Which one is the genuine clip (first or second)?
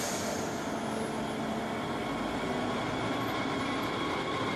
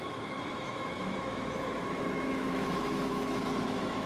first